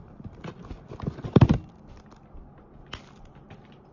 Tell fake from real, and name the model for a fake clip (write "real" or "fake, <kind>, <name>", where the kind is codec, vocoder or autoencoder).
real